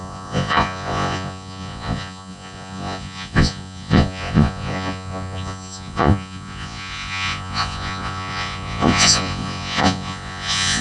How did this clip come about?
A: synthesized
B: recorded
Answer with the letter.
A